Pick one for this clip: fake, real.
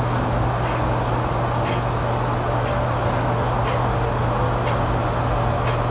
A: real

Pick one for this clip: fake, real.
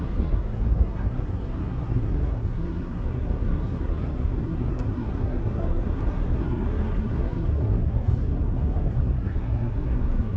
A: fake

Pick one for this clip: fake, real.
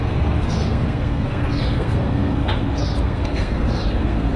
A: fake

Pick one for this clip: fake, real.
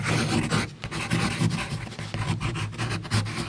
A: real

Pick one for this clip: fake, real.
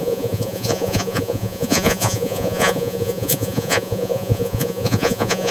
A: fake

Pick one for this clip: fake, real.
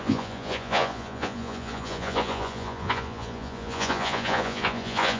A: fake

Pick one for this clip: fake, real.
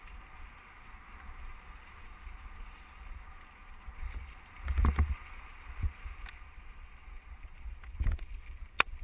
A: real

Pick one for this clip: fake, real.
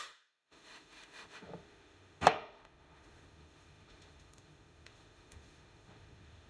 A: fake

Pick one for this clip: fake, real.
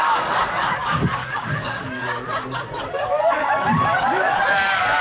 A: fake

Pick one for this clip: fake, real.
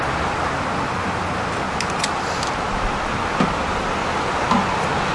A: real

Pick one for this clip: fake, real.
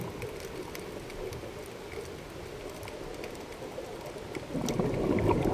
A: real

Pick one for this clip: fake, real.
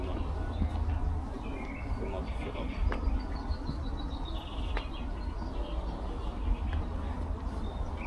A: real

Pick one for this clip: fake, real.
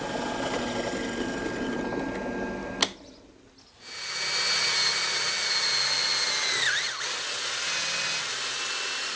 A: real